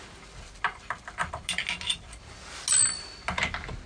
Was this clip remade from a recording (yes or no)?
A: no